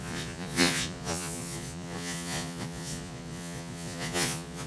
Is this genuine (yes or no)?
no